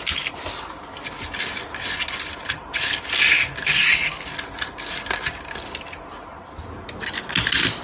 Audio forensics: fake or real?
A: real